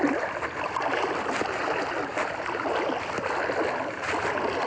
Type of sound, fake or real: real